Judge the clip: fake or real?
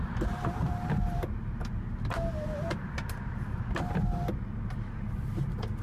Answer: real